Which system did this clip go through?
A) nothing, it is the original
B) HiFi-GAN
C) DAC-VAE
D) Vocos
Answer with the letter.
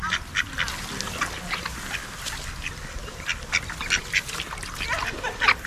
A